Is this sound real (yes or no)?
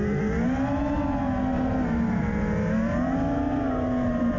yes